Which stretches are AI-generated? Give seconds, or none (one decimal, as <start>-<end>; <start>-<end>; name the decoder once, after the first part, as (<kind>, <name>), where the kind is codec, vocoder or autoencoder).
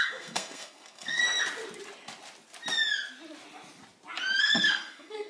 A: 0.0-1.2 (codec, SNAC); 4.4-5.3